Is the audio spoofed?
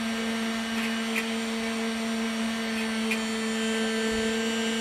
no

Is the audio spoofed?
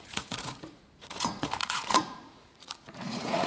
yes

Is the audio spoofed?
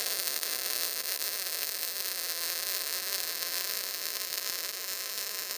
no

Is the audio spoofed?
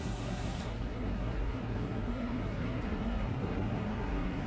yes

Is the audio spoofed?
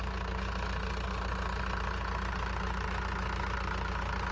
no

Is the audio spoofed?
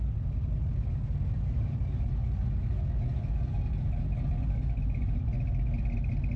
no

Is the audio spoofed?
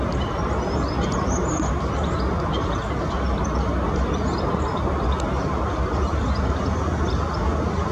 no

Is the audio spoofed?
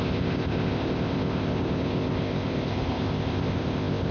yes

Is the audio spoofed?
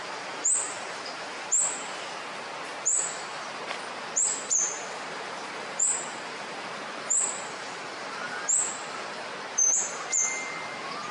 no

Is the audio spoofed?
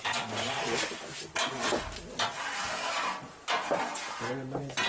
no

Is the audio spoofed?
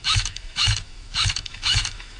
yes